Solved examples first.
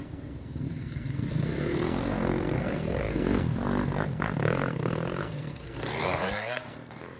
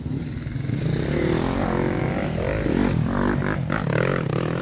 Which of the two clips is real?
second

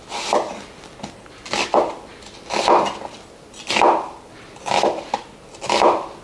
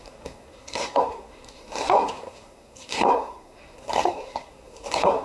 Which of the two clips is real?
first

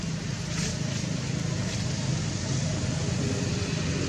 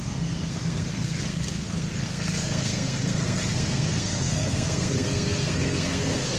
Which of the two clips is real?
first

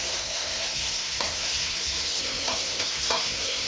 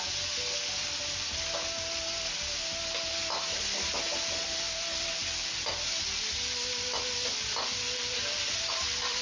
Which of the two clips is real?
second